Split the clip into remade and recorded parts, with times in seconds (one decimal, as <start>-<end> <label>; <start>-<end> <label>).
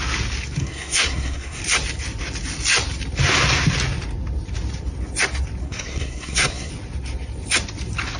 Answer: 0.0-0.6 recorded; 0.6-1.6 remade; 1.6-5.6 recorded; 5.6-6.7 remade; 6.7-8.2 recorded